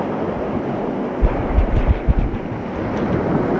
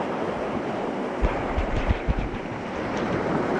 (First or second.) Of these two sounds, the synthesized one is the second